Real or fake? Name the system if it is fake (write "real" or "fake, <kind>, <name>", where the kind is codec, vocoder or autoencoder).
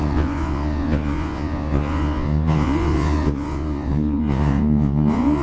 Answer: fake, vocoder, Vocos